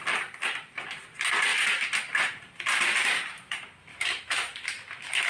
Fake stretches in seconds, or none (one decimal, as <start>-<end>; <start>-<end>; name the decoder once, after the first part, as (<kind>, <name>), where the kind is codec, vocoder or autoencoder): 3.9-5.3 (autoencoder, DAC-VAE)